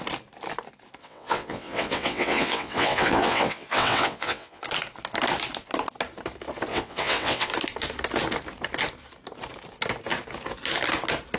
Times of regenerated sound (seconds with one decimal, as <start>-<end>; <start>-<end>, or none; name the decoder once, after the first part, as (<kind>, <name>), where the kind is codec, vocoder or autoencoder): 1.0-4.6 (vocoder, WaveNeXt); 6.7-7.5